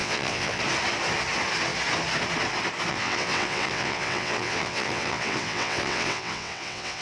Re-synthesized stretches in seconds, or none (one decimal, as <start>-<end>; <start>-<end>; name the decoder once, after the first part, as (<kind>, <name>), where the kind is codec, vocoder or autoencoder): 0.0-0.6 (vocoder, WaveNeXt); 2.9-7.0